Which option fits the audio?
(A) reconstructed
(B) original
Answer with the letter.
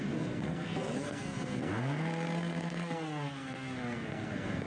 A